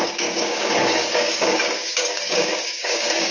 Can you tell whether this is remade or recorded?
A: remade